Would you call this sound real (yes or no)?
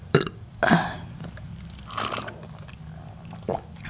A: no